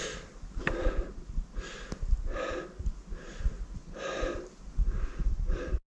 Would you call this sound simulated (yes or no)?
no